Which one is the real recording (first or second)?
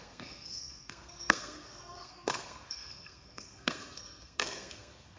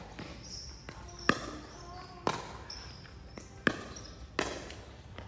second